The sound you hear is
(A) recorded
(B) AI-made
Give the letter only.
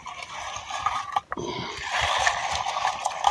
A